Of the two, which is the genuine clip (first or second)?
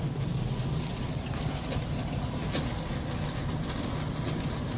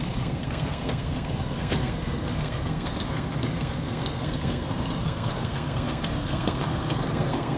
first